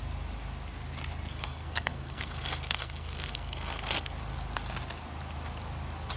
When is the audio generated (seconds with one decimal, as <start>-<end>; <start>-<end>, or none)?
1.3-4.1

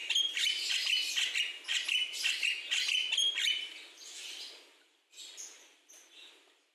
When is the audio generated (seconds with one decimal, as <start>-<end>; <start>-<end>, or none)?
none

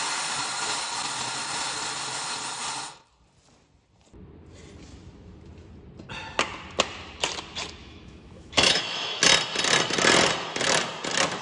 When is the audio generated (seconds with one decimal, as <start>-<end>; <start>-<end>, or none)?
7.8-9.2

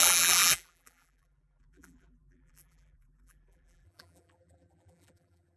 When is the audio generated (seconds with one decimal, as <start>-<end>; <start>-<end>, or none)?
0.0-5.6